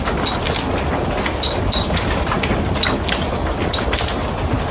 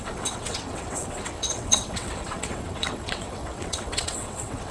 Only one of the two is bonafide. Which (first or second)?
first